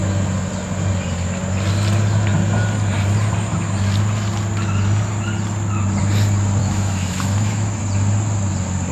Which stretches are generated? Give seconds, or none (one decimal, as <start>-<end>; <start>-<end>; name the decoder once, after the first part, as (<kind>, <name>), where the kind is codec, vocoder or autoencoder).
6.6-7.8 (autoencoder, DAC-VAE)